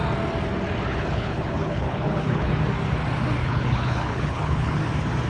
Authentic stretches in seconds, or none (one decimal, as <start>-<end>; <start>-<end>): 0.0-0.9; 2.5-3.4; 4.8-5.3